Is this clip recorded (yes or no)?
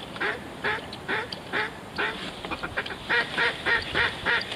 no